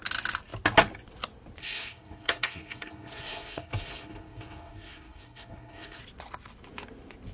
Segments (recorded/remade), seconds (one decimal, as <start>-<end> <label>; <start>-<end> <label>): 0.0-1.6 recorded; 1.6-6.0 remade; 6.0-7.3 recorded